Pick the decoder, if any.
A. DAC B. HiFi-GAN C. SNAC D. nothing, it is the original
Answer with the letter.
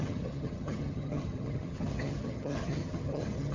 B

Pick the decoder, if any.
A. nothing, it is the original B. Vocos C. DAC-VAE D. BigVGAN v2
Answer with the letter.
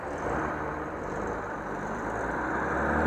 D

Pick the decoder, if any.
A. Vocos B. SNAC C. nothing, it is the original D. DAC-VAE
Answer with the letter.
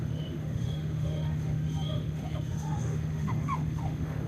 D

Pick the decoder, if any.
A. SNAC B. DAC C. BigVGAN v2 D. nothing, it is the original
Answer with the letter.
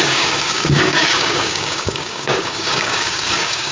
B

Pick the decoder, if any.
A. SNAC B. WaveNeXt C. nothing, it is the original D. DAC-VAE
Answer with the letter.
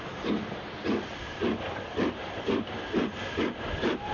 C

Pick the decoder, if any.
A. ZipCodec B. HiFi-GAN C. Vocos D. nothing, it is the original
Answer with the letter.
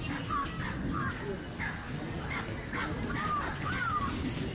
D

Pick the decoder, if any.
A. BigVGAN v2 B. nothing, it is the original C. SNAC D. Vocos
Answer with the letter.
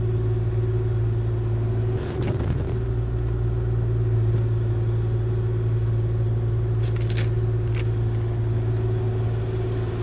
B